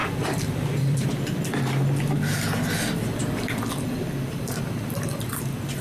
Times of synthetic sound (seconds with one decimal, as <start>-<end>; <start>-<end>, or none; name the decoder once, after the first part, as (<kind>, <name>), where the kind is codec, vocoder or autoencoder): 0.0-1.1 (vocoder, BigVGAN v2); 3.2-5.3

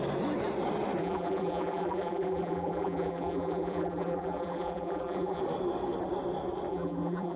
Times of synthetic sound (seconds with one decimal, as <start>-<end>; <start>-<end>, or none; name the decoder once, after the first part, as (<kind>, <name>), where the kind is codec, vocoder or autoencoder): 1.0-5.4 (vocoder, BigVGAN v2); 6.7-7.4

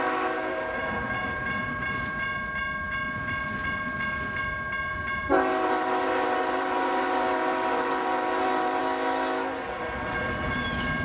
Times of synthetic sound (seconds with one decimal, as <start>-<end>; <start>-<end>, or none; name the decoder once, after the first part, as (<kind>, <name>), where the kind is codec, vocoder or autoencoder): 0.0-2.1 (vocoder, BigVGAN v2); 4.9-8.8; 9.8-11.0

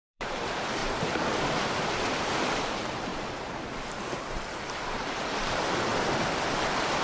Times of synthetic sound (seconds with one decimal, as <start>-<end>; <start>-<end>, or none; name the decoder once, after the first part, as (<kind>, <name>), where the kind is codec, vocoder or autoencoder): 0.0-0.8 (vocoder, BigVGAN v2); 2.4-3.1; 4.3-5.9; 6.5-7.0